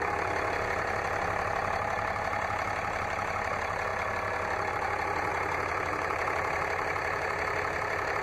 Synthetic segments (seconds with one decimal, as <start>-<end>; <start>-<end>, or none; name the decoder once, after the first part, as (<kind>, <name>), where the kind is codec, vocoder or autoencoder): 0.0-3.9 (vocoder, BigVGAN v2); 4.7-5.3; 5.9-8.2